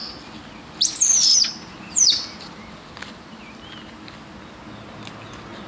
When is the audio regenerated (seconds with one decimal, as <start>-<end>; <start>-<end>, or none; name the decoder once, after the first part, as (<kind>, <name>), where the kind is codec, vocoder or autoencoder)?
0.0-3.4 (vocoder, BigVGAN v2)